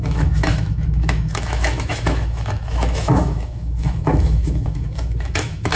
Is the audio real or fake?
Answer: fake